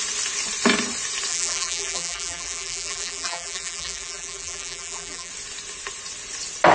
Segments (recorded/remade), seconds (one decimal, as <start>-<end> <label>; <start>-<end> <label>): 0.0-1.3 recorded; 1.3-5.3 remade; 5.3-6.7 recorded